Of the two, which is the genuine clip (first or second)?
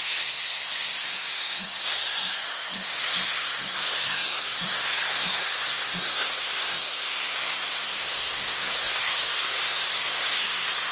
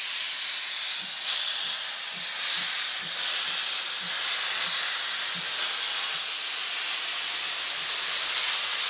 second